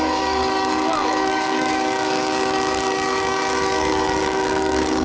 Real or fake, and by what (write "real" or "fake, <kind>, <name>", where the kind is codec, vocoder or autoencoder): fake, codec, DAC